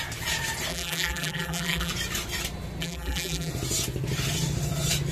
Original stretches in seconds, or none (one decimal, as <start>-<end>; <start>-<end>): 0.0-0.7; 1.9-2.8; 3.5-5.1